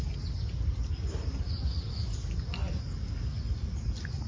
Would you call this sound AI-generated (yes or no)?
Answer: no